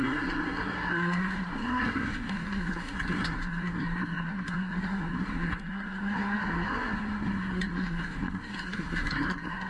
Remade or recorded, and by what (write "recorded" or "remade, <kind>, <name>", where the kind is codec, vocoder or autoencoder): remade, codec, SNAC